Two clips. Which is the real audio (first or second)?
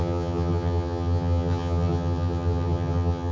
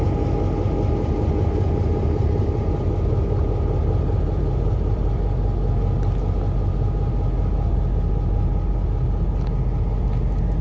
second